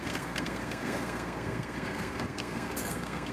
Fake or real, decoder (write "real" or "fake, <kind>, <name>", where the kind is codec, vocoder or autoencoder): fake, codec, SNAC